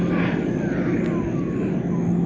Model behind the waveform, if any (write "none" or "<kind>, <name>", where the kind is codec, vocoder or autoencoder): none